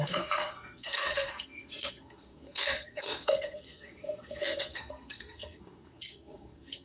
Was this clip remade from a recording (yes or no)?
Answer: yes